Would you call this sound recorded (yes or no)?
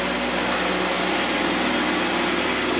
yes